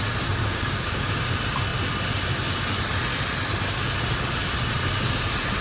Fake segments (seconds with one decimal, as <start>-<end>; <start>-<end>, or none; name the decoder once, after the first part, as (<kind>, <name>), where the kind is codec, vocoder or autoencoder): 0.4-1.2 (codec, DAC)